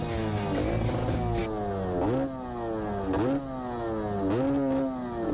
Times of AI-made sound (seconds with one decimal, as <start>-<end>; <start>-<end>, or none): none